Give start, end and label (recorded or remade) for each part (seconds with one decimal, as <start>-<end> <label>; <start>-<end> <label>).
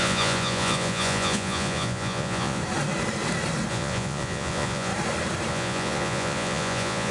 0.0-2.6 remade; 2.6-3.7 recorded; 3.7-4.9 remade; 4.9-5.5 recorded; 5.5-7.1 remade